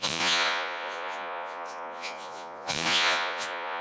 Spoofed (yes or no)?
yes